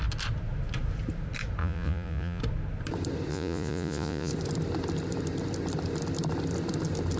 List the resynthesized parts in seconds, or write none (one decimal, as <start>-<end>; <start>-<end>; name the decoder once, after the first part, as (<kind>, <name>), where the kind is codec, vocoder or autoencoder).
1.6-2.4 (vocoder, Vocos); 3.3-4.3